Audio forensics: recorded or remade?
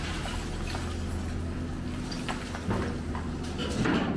recorded